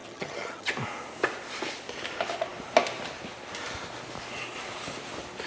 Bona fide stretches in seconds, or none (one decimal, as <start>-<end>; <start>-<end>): 0.7-5.5